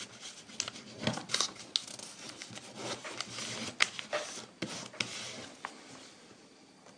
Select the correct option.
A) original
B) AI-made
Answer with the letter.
A